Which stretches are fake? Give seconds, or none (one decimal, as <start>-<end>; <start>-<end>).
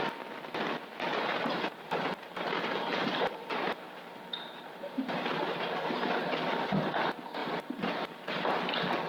1.1-5.9; 7.4-8.6